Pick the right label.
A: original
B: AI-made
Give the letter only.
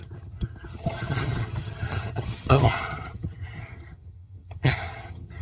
B